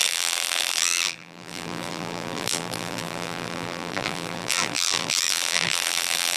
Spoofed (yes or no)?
yes